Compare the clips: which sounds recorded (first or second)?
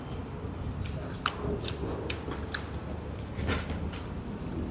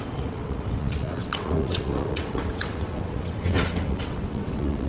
first